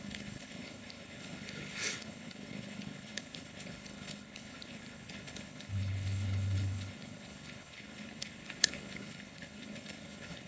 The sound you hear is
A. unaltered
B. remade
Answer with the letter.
B